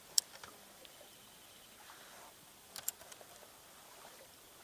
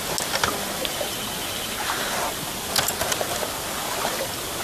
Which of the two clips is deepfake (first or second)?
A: first